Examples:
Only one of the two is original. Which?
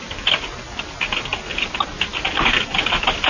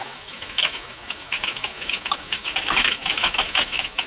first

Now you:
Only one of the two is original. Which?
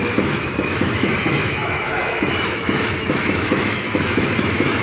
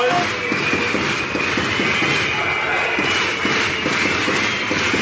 second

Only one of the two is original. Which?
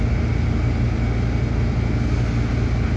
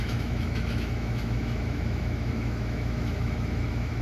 first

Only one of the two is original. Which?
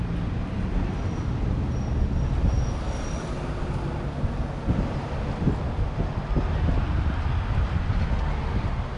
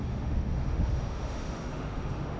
first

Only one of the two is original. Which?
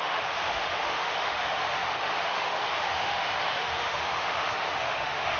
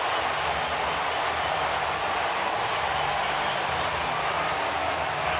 second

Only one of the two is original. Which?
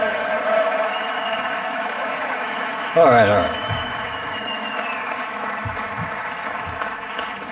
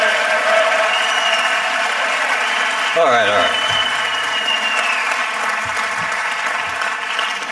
second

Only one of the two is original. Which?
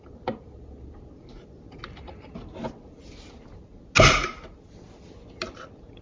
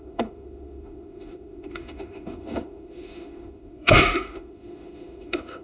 first